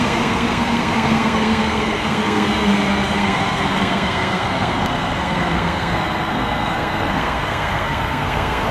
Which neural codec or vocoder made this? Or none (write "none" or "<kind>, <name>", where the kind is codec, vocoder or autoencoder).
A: codec, SNAC